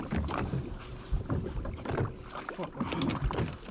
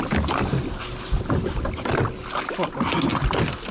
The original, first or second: second